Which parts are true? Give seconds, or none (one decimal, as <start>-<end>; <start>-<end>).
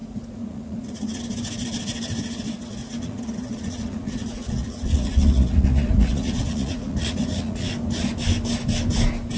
1.2-2.8; 7.7-9.4